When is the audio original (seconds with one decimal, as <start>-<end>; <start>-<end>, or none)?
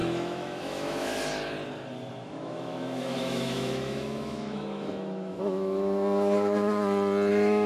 1.1-2.1; 6.8-7.3